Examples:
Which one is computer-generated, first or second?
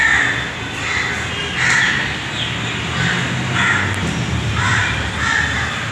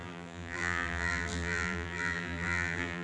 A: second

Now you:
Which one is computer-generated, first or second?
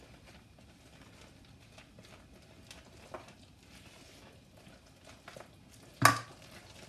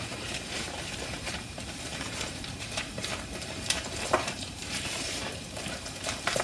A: second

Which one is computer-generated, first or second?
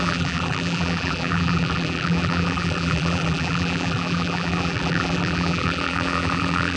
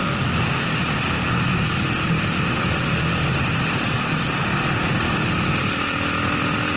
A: first